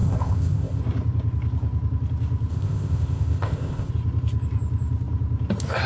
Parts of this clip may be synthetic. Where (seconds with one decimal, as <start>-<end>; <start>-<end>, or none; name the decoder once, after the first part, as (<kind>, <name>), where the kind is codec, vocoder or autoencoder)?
0.0-0.8 (codec, ZipCodec); 2.5-3.9